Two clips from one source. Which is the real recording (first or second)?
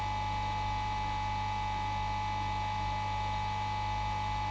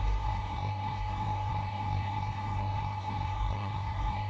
first